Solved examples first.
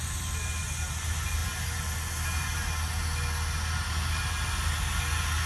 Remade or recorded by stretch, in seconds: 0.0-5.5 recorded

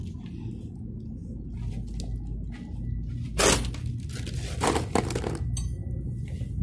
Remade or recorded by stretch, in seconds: 0.0-6.6 recorded

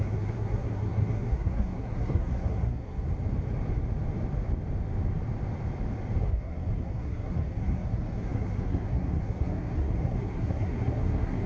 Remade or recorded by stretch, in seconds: 0.0-3.1 remade; 3.1-6.2 recorded; 6.2-11.5 remade

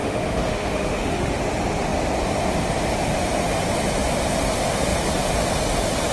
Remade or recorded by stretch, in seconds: 0.0-1.4 remade; 1.4-6.1 recorded

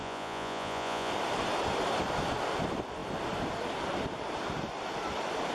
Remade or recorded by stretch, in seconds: 0.0-1.1 remade; 1.1-5.5 recorded

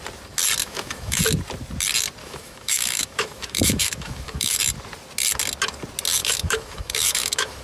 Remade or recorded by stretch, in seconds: 0.0-0.6 recorded; 0.6-1.2 remade; 1.2-2.2 recorded; 2.2-4.6 remade; 4.6-6.2 recorded; 6.2-7.6 remade

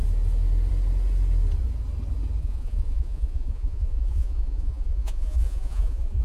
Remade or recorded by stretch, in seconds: 0.0-2.4 recorded; 2.4-6.2 remade